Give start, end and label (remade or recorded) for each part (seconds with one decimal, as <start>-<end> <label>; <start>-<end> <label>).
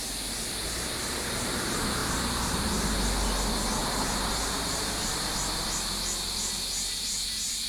0.0-2.0 recorded; 2.0-2.5 remade; 2.5-3.8 recorded; 3.8-5.3 remade; 5.3-7.7 recorded